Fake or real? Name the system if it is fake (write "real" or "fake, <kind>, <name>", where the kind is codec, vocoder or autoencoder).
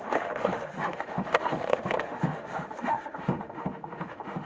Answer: fake, autoencoder, DAC-VAE